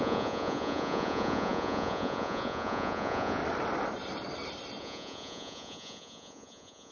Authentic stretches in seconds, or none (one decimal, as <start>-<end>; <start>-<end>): 3.4-4.8